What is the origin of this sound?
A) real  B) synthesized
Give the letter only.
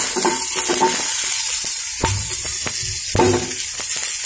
A